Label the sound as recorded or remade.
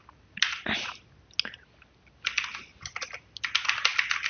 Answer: recorded